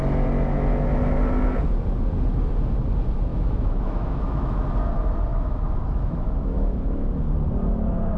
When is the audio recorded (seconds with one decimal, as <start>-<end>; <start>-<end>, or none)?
0.0-3.3; 4.6-5.3; 7.1-8.2